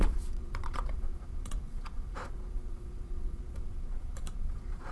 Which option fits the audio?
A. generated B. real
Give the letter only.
A